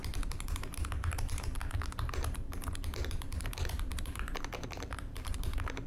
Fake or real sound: fake